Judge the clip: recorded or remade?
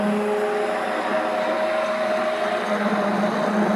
recorded